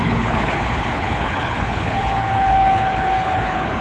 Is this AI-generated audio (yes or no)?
yes